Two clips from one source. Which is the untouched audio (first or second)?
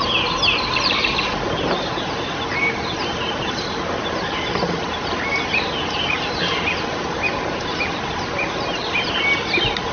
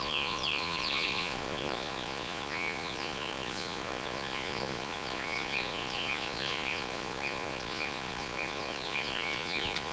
first